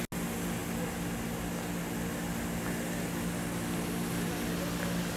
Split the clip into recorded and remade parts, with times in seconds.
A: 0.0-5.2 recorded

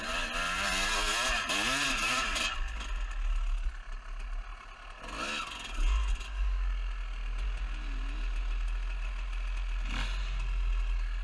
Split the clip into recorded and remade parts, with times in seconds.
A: 0.0-11.2 recorded

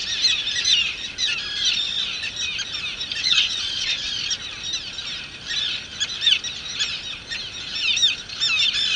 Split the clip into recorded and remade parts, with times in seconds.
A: 0.0-3.2 recorded; 3.2-4.1 remade; 4.1-9.0 recorded

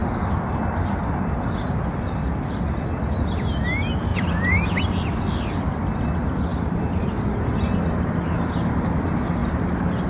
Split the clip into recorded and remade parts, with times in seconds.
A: 0.0-4.1 recorded; 4.1-4.8 remade; 4.8-6.5 recorded; 6.5-7.3 remade; 7.3-10.1 recorded

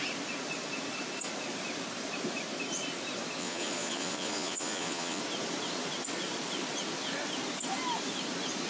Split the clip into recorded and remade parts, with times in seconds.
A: 0.0-3.4 recorded; 3.4-5.2 remade; 5.2-8.7 recorded